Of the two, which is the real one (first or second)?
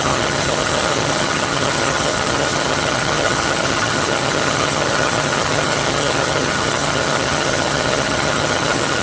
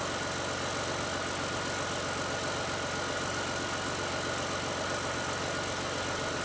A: second